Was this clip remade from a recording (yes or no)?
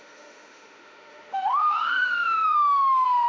yes